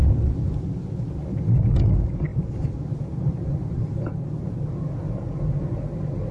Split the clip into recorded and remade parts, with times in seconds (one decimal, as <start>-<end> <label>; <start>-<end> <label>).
0.0-6.3 recorded